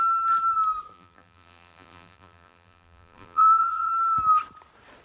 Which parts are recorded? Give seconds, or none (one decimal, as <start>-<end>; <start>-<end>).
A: 0.0-0.9; 3.9-5.0